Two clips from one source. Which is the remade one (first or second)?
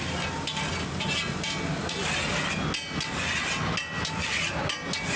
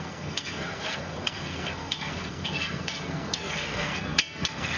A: second